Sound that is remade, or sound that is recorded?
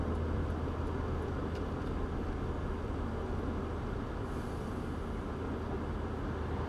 recorded